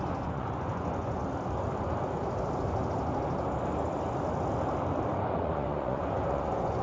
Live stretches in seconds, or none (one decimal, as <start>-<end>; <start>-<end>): 1.2-5.3